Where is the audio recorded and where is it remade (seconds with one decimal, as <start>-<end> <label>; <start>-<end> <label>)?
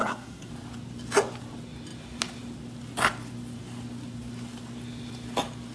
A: 0.0-0.5 remade; 0.5-5.7 recorded